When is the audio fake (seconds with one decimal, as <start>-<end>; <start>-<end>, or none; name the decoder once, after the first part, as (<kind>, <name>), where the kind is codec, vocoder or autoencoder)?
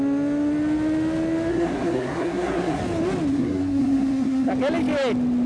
1.5-2.8 (codec, SNAC); 3.3-4.5